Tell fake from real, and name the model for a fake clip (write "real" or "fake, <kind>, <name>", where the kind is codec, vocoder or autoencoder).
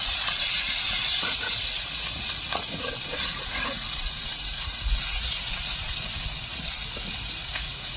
fake, vocoder, Vocos